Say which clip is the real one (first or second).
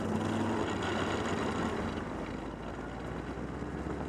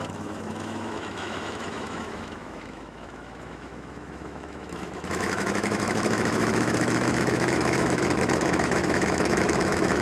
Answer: first